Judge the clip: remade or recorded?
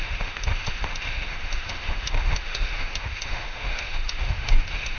remade